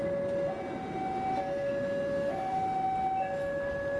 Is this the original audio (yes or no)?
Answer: yes